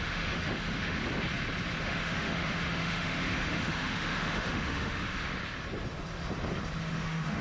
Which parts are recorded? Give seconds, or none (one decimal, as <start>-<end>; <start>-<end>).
1.0-1.8; 5.4-6.8